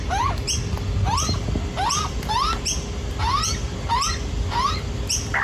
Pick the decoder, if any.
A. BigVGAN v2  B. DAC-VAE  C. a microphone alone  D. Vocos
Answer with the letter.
C